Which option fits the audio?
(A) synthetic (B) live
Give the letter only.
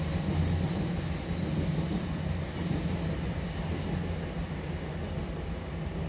B